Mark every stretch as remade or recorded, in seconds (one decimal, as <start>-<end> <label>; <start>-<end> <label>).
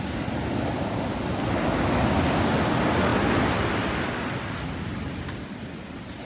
0.0-6.2 recorded